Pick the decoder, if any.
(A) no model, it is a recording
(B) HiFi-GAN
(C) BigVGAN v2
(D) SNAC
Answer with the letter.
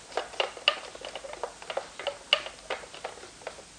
A